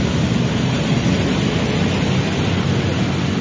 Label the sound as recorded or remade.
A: recorded